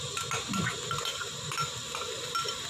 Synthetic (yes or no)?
no